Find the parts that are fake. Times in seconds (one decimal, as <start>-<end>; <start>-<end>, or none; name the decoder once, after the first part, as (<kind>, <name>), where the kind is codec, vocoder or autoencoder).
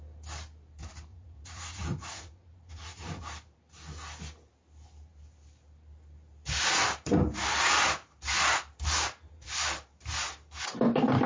1.1-3.2 (vocoder, Vocos)